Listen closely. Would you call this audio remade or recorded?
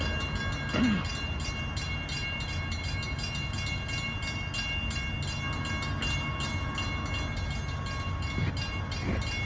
recorded